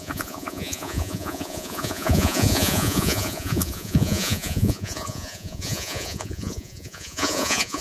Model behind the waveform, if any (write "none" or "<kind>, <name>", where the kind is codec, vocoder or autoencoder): vocoder, Vocos